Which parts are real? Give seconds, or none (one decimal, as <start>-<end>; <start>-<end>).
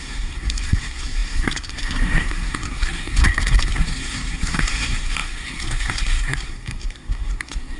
none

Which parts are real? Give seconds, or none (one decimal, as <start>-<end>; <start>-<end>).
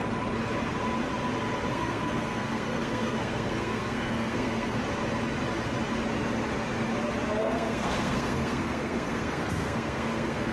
0.0-1.7; 4.8-7.4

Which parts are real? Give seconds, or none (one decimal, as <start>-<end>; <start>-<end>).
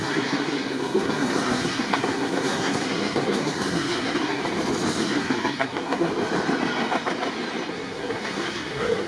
4.4-5.0; 6.1-7.7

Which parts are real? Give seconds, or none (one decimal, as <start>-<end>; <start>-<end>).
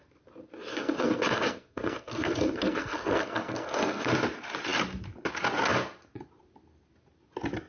0.0-0.7; 4.1-7.7